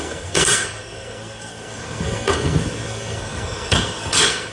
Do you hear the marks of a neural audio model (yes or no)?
yes